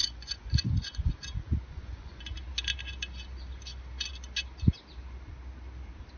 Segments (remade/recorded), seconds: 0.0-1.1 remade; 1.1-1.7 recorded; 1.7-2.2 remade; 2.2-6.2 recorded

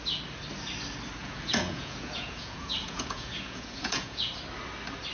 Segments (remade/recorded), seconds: 0.0-1.2 recorded; 1.2-4.3 remade; 4.3-5.1 recorded